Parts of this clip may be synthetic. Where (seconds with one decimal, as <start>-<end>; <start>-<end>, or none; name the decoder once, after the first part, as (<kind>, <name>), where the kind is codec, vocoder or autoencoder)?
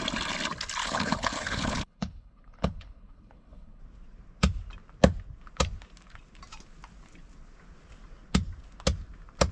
0.8-3.8 (codec, HILCodec)